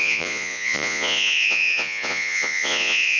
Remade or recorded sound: remade